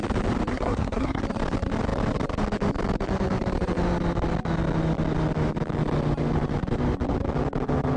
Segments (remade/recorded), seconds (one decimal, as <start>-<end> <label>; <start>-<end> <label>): 0.0-0.5 recorded; 0.5-1.2 remade; 1.2-8.0 recorded